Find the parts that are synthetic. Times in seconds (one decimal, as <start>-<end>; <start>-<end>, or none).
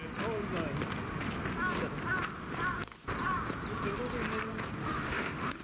4.8-5.6